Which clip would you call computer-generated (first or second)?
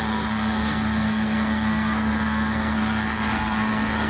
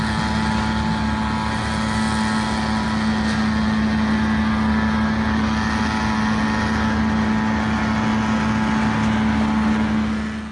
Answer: first